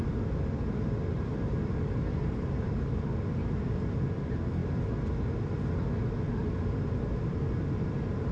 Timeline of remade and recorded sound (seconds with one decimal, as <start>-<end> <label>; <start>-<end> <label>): 0.0-4.6 remade; 4.6-6.3 recorded; 6.3-8.3 remade